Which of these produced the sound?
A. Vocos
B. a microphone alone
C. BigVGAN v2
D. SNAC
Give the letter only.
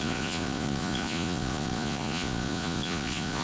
A